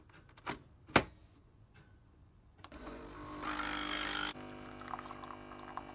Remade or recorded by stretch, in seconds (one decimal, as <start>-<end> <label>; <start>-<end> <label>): 0.0-1.2 recorded; 1.2-3.0 remade; 3.0-5.9 recorded